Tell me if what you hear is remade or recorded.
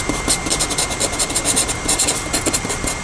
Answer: recorded